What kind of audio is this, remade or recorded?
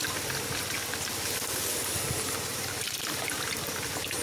recorded